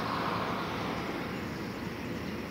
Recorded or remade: recorded